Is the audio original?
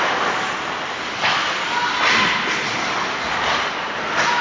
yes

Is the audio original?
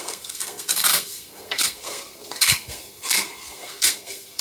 no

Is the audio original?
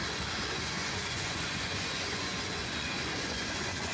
no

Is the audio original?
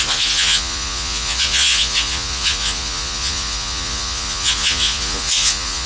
no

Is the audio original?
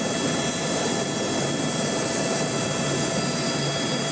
yes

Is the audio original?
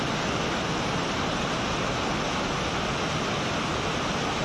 yes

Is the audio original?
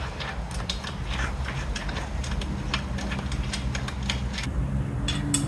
yes